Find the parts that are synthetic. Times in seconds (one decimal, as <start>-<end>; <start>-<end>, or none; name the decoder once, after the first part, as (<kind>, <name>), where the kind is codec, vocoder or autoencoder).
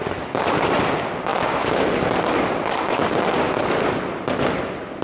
none